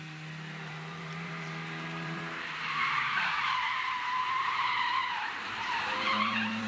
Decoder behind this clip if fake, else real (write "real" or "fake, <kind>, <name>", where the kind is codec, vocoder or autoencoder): fake, vocoder, BigVGAN v2